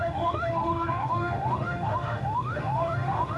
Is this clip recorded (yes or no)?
no